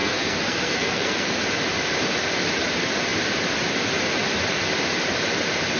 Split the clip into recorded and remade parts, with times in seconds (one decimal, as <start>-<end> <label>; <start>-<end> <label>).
0.0-1.3 remade; 1.3-5.8 recorded